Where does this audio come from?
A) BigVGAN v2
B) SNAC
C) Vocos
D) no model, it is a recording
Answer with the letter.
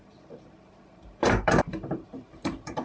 A